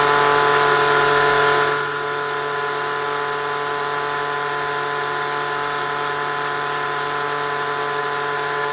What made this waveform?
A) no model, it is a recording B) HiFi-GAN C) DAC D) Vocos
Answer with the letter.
A